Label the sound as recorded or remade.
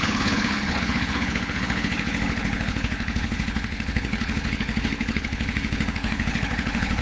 remade